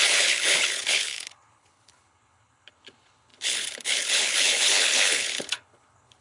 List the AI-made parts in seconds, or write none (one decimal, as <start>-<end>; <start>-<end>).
0.0-6.2